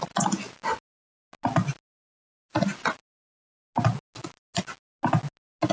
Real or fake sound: real